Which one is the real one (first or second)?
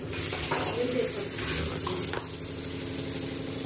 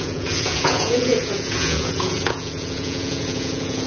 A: first